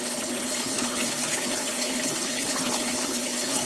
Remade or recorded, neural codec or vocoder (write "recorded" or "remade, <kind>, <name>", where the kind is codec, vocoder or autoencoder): remade, codec, HILCodec